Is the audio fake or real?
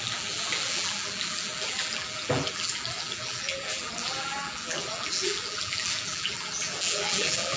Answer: fake